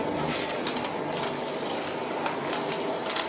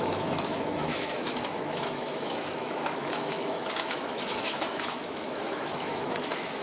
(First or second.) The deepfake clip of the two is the second